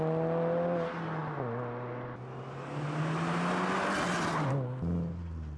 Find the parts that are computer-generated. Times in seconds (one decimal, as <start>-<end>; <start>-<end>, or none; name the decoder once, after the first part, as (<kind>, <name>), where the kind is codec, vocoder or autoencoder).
none